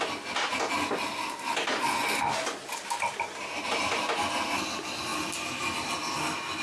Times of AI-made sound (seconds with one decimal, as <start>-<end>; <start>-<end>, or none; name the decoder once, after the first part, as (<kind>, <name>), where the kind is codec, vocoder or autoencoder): none